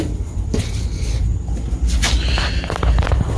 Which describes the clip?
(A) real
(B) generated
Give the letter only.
A